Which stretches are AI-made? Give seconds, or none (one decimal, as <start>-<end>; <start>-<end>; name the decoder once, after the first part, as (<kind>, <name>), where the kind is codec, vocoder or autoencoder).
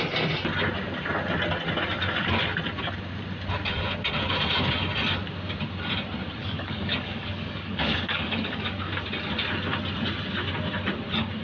6.4-8.9 (codec, DAC)